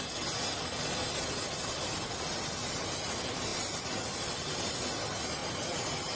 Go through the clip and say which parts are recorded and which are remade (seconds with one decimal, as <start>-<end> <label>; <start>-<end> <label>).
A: 0.0-6.2 recorded